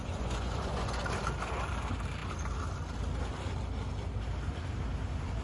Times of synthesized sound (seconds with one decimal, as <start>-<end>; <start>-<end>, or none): 0.0-1.0